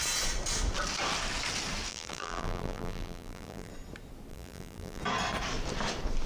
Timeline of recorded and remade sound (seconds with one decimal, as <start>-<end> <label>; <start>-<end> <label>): 0.0-1.9 recorded; 1.9-3.7 remade; 3.7-4.3 recorded; 4.3-5.0 remade; 5.0-6.3 recorded